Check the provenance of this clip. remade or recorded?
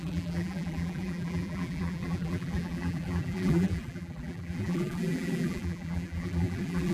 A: remade